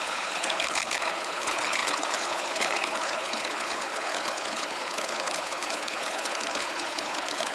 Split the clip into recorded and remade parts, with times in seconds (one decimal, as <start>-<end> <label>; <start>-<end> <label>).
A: 0.0-7.5 remade